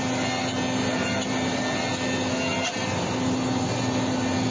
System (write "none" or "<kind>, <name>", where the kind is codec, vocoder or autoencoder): none